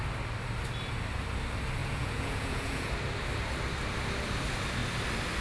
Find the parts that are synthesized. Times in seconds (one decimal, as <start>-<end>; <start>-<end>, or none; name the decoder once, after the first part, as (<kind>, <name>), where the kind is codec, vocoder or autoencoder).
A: 1.8-2.9 (vocoder, Vocos)